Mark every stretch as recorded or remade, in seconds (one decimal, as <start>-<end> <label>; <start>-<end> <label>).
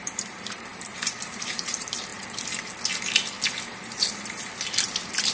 0.0-2.1 remade; 2.1-5.3 recorded